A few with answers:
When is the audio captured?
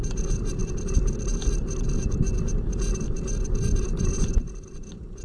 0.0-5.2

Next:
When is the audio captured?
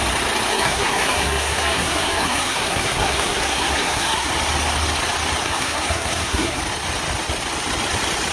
0.0-0.5; 4.3-5.4; 6.6-8.3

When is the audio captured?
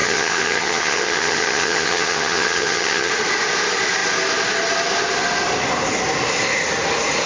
3.1-7.3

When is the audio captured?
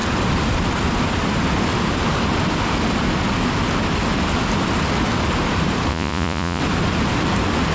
0.0-5.9; 6.6-7.7